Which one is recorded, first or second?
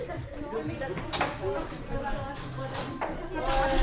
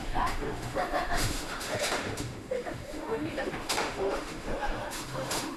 first